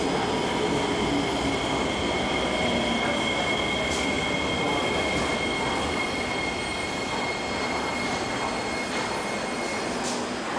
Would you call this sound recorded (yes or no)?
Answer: yes